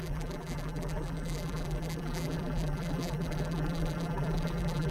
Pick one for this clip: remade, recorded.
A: remade